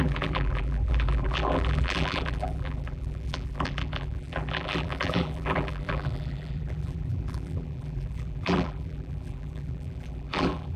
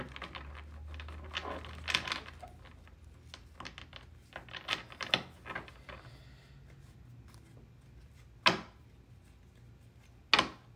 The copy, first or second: first